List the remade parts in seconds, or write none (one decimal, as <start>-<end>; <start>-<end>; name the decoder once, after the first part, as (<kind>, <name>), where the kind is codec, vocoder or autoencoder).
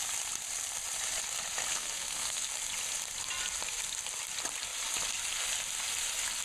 1.7-2.5 (codec, SNAC)